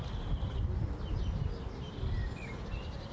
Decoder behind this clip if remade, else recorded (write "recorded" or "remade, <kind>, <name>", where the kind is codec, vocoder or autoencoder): recorded